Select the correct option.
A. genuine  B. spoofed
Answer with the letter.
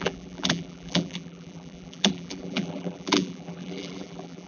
B